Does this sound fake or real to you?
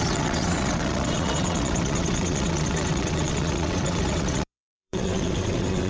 fake